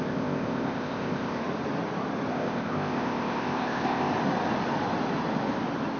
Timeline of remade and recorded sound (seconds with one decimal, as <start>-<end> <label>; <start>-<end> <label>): 0.0-1.4 remade; 1.4-2.3 recorded; 2.3-4.1 remade; 4.1-6.0 recorded